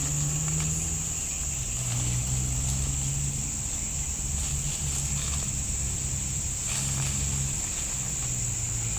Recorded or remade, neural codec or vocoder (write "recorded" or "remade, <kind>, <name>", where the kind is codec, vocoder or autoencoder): recorded